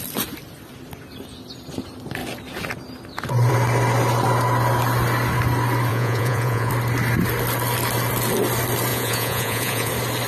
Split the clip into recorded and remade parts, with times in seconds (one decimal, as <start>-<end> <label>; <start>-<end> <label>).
0.0-5.9 recorded; 5.9-6.7 remade; 6.7-8.9 recorded; 8.9-9.9 remade; 9.9-10.3 recorded